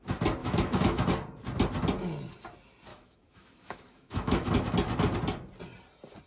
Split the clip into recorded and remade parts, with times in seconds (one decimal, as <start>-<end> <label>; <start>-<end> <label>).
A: 0.0-0.4 recorded; 0.4-1.1 remade; 1.1-2.9 recorded; 2.9-4.5 remade; 4.5-6.3 recorded